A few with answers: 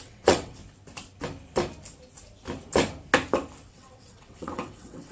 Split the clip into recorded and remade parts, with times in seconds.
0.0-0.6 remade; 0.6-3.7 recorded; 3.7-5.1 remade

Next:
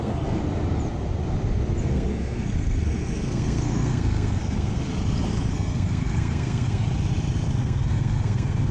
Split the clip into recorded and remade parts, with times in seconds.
0.0-0.4 remade; 0.4-1.8 recorded; 1.8-4.9 remade; 4.9-5.5 recorded; 5.5-6.8 remade; 6.8-7.6 recorded; 7.6-8.7 remade

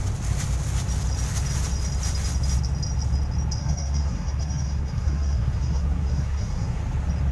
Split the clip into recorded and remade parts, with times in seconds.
0.0-3.6 recorded; 3.6-6.8 remade; 6.8-7.3 recorded

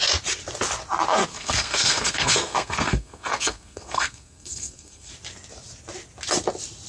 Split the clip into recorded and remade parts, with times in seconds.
0.0-1.3 recorded; 1.3-5.1 remade; 5.1-6.9 recorded

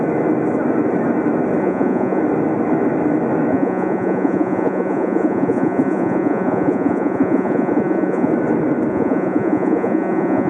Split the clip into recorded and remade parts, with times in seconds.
0.0-1.6 recorded; 1.6-2.2 remade; 2.2-3.5 recorded; 3.5-8.3 remade; 8.3-8.9 recorded; 8.9-10.5 remade

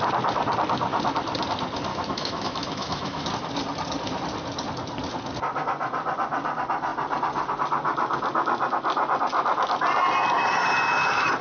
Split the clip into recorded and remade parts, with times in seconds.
0.0-1.9 recorded; 1.9-3.3 remade; 3.3-11.4 recorded

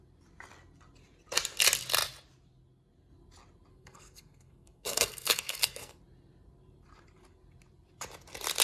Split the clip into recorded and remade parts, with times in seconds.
0.0-3.7 recorded; 3.7-6.0 remade; 6.0-8.6 recorded